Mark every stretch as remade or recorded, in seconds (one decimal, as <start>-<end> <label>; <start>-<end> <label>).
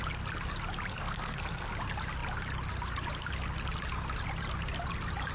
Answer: 0.0-0.9 recorded; 0.9-1.7 remade; 1.7-5.3 recorded